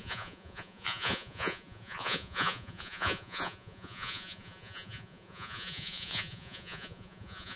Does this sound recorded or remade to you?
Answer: remade